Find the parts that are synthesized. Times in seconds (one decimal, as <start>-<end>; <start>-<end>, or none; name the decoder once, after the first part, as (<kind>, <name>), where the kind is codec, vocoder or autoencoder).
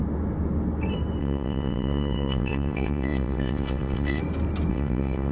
1.2-4.2 (vocoder, WaveNeXt); 4.7-5.3